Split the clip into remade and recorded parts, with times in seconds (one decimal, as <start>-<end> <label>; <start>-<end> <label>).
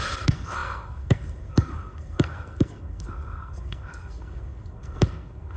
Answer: 0.0-5.6 remade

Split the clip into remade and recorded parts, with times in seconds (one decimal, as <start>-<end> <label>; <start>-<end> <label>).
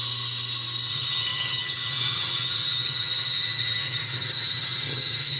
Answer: 0.0-0.9 recorded; 0.9-5.4 remade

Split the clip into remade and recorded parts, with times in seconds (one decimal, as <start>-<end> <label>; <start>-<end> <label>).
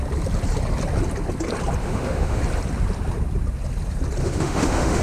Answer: 0.0-1.8 recorded; 1.8-2.4 remade; 2.4-4.2 recorded; 4.2-5.0 remade